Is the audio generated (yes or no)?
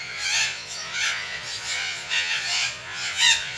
yes